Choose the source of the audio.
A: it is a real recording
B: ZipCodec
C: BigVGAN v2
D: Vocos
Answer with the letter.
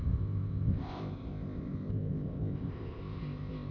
B